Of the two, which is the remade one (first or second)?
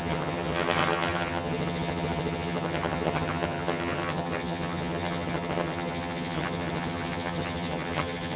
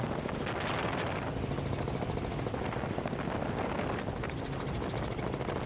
first